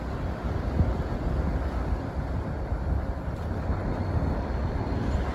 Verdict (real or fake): real